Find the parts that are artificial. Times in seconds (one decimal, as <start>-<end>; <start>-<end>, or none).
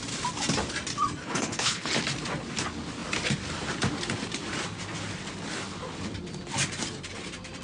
1.2-1.9